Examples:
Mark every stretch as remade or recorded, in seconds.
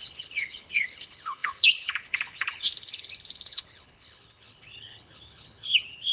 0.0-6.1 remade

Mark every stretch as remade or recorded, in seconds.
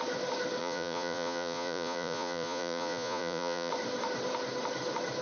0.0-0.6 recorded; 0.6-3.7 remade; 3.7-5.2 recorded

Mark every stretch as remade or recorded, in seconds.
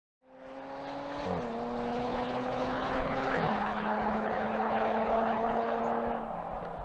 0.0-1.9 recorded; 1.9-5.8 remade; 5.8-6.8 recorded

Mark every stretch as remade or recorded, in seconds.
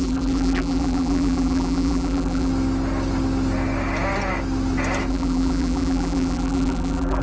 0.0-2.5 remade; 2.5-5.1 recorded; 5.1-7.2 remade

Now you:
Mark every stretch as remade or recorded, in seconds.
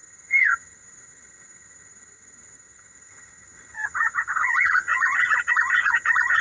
0.0-6.4 remade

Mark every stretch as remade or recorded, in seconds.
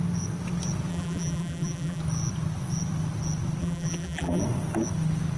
0.0-0.9 recorded; 0.9-2.0 remade; 2.0-3.6 recorded; 3.6-4.4 remade; 4.4-5.4 recorded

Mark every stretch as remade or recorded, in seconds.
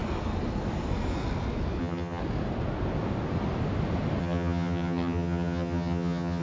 0.0-1.8 recorded; 1.8-2.2 remade; 2.2-4.2 recorded; 4.2-6.4 remade